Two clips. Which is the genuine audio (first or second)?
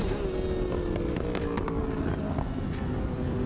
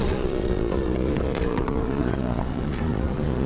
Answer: first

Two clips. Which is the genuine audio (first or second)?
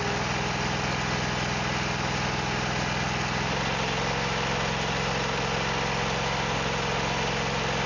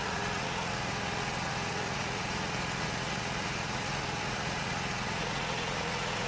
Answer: first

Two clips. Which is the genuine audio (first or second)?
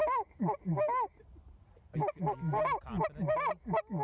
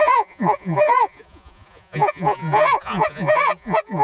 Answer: first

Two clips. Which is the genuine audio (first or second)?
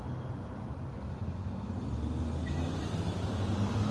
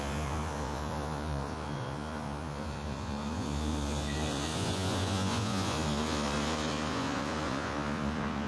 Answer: first